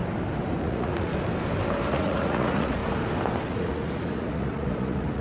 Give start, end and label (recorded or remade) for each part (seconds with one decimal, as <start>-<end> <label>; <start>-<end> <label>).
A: 0.0-0.6 recorded; 0.6-1.1 remade; 1.1-1.9 recorded; 1.9-2.8 remade; 2.8-3.4 recorded; 3.4-5.2 remade